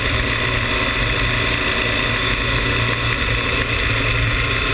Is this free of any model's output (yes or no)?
yes